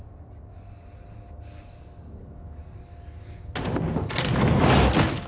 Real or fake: real